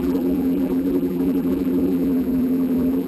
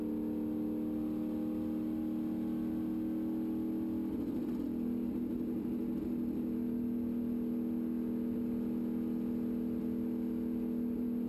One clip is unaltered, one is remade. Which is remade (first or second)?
first